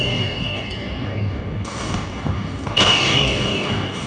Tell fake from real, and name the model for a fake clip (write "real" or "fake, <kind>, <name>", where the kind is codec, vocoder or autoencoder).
fake, codec, DAC